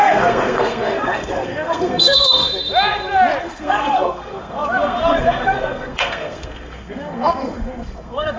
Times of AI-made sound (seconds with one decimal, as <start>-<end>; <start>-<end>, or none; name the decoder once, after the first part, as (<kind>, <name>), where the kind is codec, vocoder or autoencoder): 0.0-2.4 (codec, SNAC); 3.4-8.4